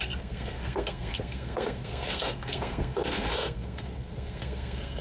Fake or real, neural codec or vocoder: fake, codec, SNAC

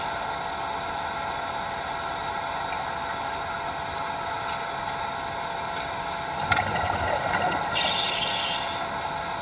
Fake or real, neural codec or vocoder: real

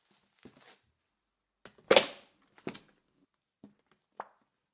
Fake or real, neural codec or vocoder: real